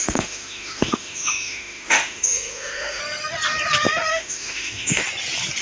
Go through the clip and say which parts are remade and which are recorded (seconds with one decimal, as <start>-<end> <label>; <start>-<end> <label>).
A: 0.0-3.0 remade; 3.0-4.1 recorded; 4.1-5.0 remade; 5.0-5.6 recorded